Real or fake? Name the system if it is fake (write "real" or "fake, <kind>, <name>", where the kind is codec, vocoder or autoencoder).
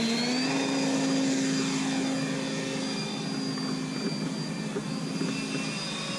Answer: real